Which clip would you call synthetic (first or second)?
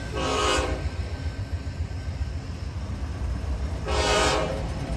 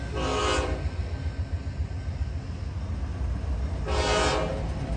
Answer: first